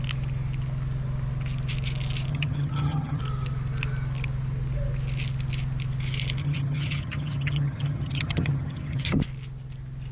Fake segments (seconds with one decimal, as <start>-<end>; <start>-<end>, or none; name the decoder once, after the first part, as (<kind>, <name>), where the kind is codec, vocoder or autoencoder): 2.3-3.2 (vocoder, HiFi-GAN); 6.4-9.2